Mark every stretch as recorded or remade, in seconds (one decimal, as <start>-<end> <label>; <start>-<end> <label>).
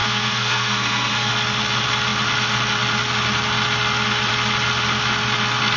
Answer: 0.0-1.3 remade; 1.3-5.8 recorded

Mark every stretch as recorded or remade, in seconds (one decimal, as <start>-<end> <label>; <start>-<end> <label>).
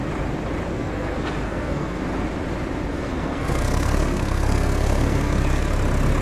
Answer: 0.0-0.7 recorded; 0.7-2.0 remade; 2.0-2.9 recorded; 2.9-5.7 remade; 5.7-6.2 recorded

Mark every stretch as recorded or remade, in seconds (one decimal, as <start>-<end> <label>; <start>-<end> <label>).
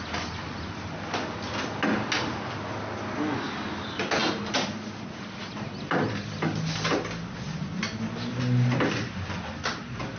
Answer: 0.0-10.2 recorded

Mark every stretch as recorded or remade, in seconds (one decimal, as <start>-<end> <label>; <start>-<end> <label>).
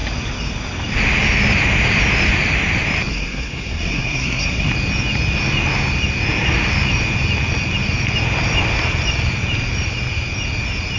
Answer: 0.0-3.1 recorded; 3.1-4.7 remade; 4.7-11.0 recorded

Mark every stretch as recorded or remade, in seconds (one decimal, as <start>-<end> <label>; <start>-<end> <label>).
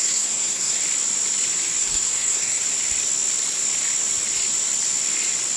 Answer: 0.0-0.8 remade; 0.8-1.8 recorded; 1.8-2.6 remade; 2.6-5.6 recorded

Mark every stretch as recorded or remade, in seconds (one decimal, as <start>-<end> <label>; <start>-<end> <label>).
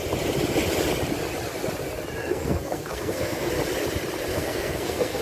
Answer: 0.0-2.2 recorded; 2.2-3.5 remade; 3.5-4.3 recorded; 4.3-5.2 remade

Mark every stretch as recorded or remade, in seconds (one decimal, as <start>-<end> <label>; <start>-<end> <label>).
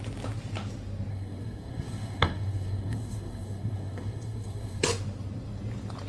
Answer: 0.0-1.1 recorded; 1.1-4.8 remade; 4.8-6.1 recorded